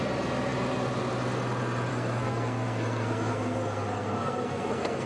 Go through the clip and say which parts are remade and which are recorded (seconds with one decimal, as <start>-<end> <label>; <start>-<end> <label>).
0.0-1.9 recorded; 1.9-5.1 remade